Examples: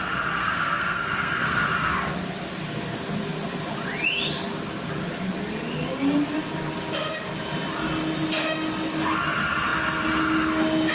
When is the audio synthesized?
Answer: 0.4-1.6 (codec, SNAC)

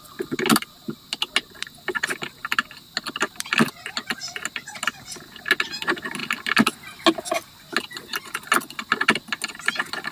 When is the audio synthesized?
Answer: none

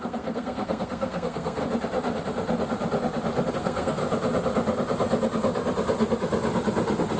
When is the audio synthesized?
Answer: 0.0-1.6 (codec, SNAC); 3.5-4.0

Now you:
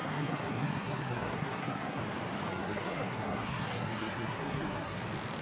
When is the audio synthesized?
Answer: 0.0-2.0 (codec, SNAC); 2.5-5.0

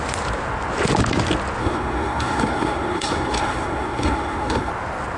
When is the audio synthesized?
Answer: 1.6-4.7 (codec, SNAC)